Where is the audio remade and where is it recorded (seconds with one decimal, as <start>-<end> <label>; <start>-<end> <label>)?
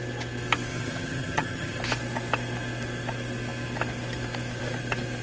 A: 0.0-0.7 recorded; 0.7-1.8 remade; 1.8-5.2 recorded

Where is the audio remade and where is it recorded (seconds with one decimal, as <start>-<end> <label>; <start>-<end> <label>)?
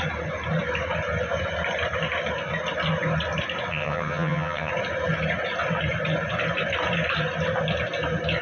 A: 0.0-3.7 recorded; 3.7-4.7 remade; 4.7-8.4 recorded